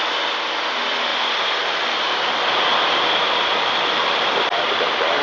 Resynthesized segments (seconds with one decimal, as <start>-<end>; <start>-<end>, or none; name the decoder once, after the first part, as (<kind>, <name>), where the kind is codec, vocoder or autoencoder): none